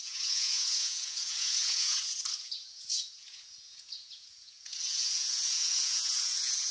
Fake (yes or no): yes